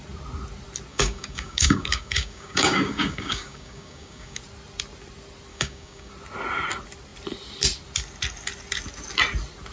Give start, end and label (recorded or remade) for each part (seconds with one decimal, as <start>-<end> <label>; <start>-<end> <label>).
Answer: 0.0-0.9 recorded; 0.9-4.4 remade; 4.4-5.5 recorded; 5.5-6.1 remade; 6.1-9.7 recorded